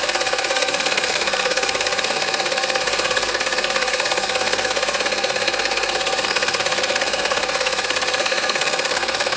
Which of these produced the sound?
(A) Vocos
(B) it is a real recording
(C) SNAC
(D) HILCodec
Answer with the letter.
C